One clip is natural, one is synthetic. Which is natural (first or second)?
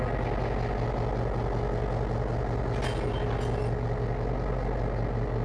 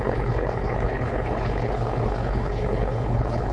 first